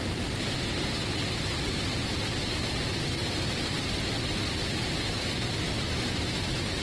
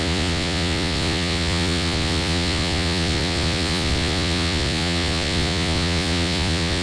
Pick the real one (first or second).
first